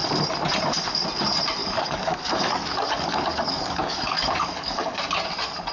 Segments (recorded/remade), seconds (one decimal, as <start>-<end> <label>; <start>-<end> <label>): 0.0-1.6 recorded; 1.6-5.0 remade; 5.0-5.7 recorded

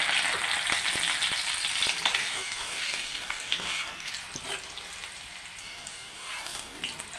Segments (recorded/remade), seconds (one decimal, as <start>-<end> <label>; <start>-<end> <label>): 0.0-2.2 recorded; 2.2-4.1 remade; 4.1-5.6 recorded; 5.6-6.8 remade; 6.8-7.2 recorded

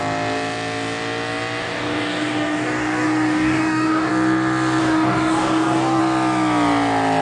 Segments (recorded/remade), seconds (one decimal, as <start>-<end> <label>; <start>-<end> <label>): 0.0-1.6 recorded; 1.6-4.1 remade; 4.1-4.8 recorded; 4.8-6.0 remade; 6.0-7.2 recorded

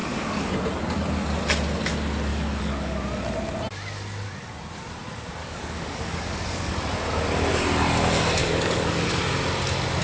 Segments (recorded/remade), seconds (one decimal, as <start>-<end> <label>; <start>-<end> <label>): 0.0-0.5 remade; 0.5-2.3 recorded; 2.3-3.0 remade; 3.0-5.4 recorded; 5.4-6.7 remade; 6.7-8.4 recorded; 8.4-9.2 remade; 9.2-10.0 recorded

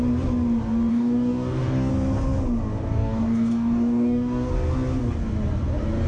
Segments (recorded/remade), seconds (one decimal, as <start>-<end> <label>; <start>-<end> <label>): 0.0-0.9 recorded; 0.9-1.9 remade; 1.9-2.8 recorded; 2.8-4.5 remade; 4.5-6.1 recorded

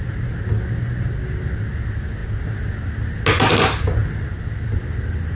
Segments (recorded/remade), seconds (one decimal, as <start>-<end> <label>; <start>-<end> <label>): 0.0-5.3 recorded

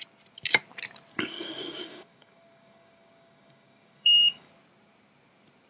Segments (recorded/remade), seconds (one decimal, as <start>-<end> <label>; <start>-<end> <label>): 0.0-1.1 recorded; 1.1-4.5 remade; 4.5-5.7 recorded